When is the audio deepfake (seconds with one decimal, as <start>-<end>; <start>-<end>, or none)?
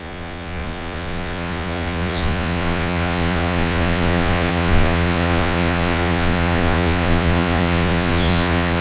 0.0-8.8